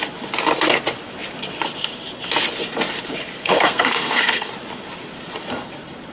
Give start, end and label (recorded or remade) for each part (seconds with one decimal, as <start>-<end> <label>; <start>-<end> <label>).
0.0-3.4 recorded; 3.4-4.5 remade; 4.5-6.1 recorded